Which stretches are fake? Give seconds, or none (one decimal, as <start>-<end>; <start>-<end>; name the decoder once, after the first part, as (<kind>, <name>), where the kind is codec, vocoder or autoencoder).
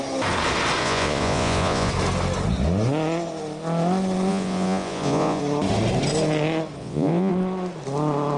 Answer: 0.8-1.9 (vocoder, Vocos); 4.3-5.4; 6.8-7.3